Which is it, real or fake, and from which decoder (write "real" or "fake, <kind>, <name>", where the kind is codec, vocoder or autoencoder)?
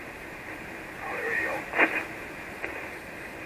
real